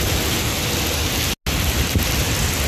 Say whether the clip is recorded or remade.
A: recorded